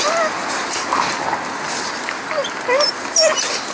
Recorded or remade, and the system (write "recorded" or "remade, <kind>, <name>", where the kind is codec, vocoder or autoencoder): recorded